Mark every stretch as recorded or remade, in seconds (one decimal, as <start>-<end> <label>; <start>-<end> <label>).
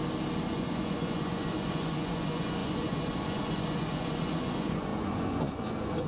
0.0-0.5 recorded; 0.5-6.1 remade